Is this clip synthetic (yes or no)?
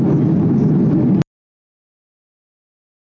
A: no